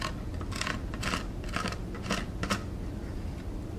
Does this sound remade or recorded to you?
recorded